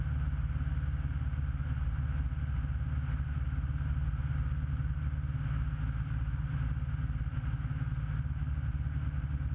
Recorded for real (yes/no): yes